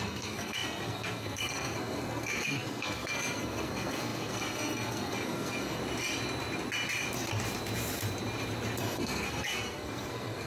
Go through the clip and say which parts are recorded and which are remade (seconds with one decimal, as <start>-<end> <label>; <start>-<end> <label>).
0.0-5.8 remade; 5.8-8.8 recorded; 8.8-10.5 remade